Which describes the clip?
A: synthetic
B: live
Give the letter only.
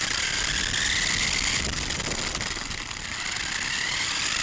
B